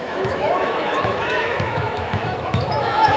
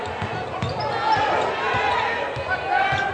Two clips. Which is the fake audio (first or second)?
first